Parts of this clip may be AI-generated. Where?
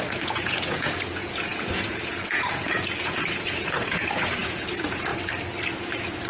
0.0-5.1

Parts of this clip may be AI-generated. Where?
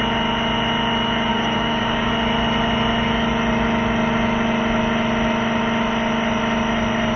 1.3-2.1